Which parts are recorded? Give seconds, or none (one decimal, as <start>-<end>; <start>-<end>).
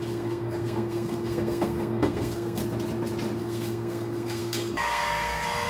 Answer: 2.6-3.4